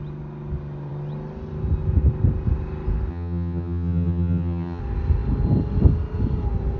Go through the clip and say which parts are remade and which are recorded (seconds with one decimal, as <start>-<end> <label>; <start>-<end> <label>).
0.0-3.1 recorded; 3.1-4.8 remade; 4.8-6.8 recorded